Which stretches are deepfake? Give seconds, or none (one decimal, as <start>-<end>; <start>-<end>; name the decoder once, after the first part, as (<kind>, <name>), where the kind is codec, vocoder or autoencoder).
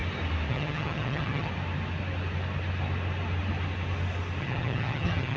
0.5-1.5 (vocoder, HiFi-GAN); 4.4-5.4